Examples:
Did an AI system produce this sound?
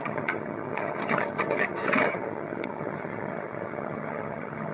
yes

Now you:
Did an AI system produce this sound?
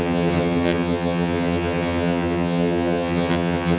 yes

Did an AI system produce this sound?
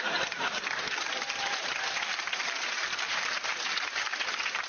no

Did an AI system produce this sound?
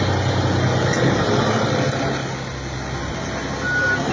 no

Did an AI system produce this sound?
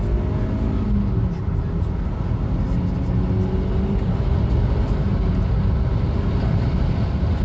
no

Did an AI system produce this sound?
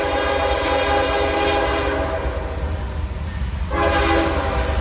no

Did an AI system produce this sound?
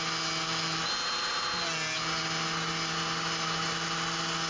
no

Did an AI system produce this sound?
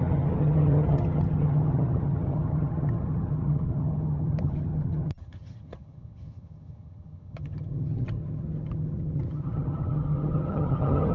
yes